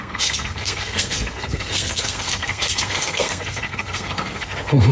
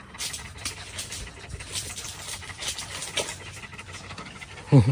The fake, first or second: first